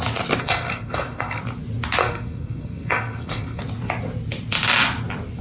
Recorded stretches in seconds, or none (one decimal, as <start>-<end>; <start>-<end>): 0.0-0.4; 1.4-2.0; 3.6-5.4